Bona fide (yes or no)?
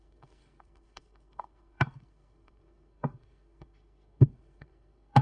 no